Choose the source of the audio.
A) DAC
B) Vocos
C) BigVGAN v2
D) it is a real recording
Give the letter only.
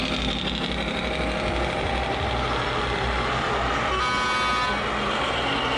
D